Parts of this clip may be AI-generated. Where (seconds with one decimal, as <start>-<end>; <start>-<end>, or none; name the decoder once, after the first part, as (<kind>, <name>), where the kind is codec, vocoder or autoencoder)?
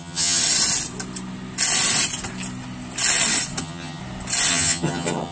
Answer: 0.0-0.4 (vocoder, HiFi-GAN); 3.6-4.0; 4.5-5.3